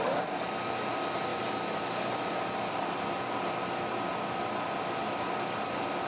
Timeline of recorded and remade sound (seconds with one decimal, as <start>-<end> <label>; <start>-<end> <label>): 0.0-1.3 recorded; 1.3-3.0 remade; 3.0-6.1 recorded